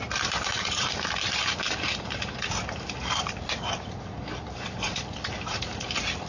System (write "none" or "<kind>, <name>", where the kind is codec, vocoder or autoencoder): vocoder, BigVGAN v2